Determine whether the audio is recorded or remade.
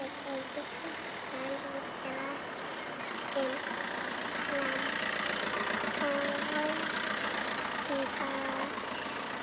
recorded